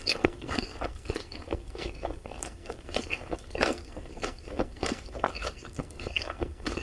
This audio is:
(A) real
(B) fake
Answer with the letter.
B